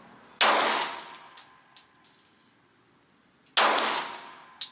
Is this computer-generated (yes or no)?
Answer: no